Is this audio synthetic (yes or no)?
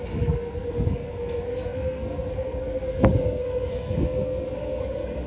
yes